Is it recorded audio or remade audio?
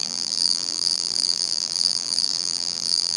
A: remade